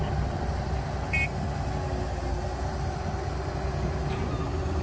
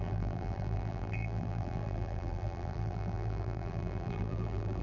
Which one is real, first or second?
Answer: first